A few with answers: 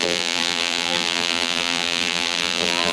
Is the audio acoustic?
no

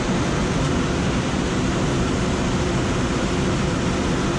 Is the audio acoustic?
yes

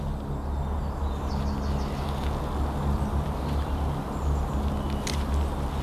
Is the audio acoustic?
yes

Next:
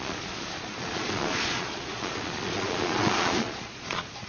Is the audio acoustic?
no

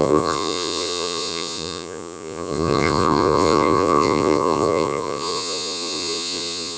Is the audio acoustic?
no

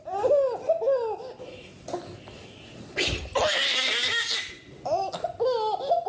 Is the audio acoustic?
yes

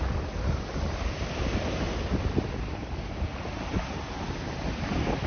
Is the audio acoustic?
yes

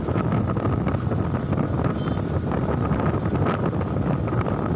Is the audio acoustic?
yes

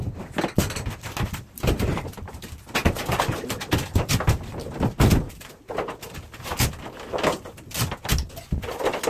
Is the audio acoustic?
yes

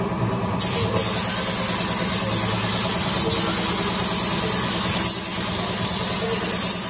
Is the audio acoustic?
yes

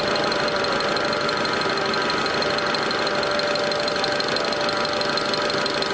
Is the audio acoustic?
yes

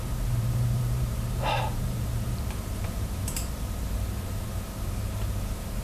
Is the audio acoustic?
no